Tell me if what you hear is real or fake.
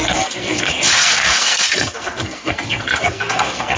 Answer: fake